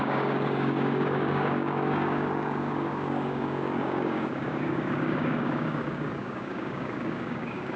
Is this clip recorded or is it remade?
remade